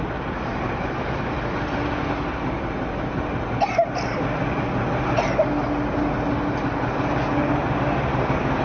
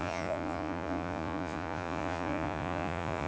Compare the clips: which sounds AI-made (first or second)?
second